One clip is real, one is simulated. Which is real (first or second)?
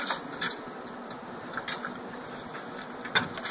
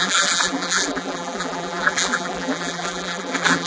first